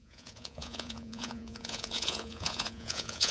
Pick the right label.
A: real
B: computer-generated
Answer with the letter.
B